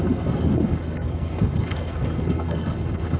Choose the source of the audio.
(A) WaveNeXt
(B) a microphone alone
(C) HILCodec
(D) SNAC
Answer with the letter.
D